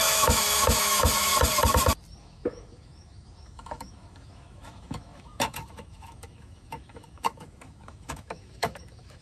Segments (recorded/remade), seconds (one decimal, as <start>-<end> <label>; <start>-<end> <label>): 0.0-1.3 remade; 1.3-2.2 recorded; 2.2-9.2 remade